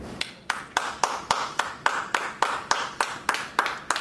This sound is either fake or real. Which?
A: real